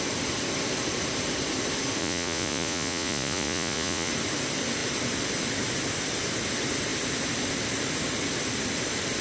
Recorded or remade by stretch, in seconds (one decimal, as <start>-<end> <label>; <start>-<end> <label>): 0.0-2.0 recorded; 2.0-4.1 remade; 4.1-9.2 recorded